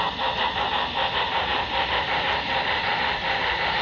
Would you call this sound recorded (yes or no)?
yes